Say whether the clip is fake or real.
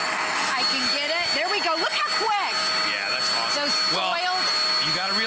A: real